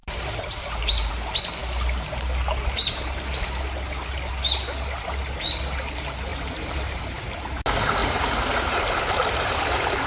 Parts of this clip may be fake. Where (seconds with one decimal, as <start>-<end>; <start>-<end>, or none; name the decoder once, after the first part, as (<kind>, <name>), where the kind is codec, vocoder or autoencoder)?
0.0-1.1 (vocoder, BigVGAN v2); 6.3-7.0; 8.0-10.1